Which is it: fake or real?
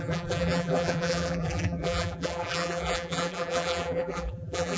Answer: fake